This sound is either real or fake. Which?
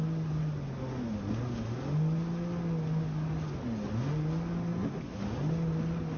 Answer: real